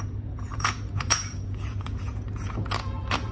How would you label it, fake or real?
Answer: fake